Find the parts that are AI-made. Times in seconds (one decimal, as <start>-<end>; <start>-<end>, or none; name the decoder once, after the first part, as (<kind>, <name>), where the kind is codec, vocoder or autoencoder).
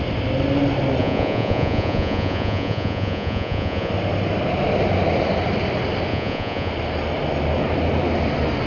1.0-3.9 (vocoder, Vocos); 6.1-6.7